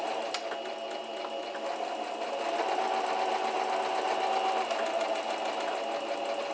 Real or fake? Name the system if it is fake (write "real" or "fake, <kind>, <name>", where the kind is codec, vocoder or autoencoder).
real